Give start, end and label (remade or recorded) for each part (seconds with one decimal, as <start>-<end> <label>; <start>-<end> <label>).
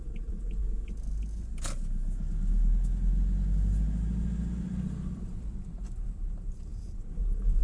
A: 0.0-0.6 remade; 0.6-5.2 recorded; 5.2-7.6 remade